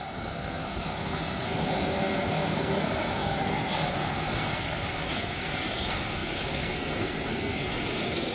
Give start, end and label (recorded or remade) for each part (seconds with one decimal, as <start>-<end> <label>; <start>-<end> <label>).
0.0-8.3 remade